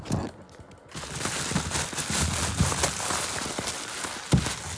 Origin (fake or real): real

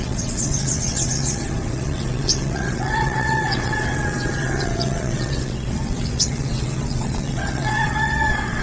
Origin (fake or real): fake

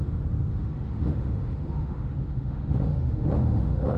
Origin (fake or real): fake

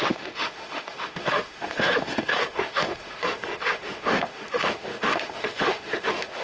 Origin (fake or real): fake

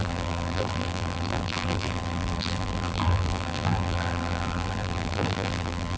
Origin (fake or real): fake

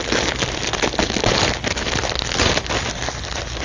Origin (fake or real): real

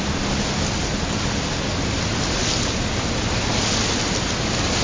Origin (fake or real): real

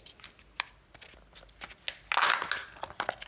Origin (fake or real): real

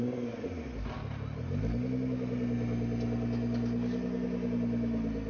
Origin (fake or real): real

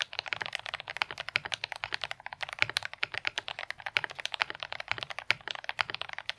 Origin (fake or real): real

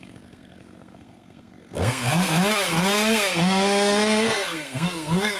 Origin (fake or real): fake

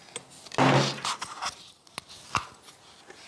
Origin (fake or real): real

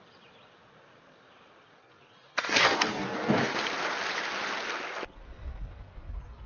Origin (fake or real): real